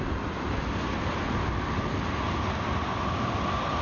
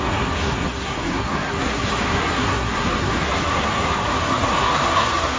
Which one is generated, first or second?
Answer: second